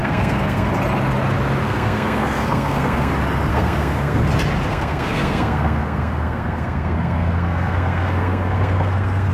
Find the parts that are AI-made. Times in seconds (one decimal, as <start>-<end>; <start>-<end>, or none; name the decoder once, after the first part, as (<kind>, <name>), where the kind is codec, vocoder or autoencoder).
0.0-0.7 (codec, SNAC); 1.6-3.1; 3.5-4.2; 4.7-9.3